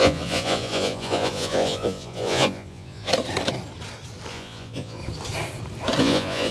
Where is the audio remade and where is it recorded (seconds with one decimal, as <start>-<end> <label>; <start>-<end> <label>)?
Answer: 0.0-3.1 remade; 3.1-4.3 recorded; 4.3-5.0 remade; 5.0-6.0 recorded; 6.0-6.5 remade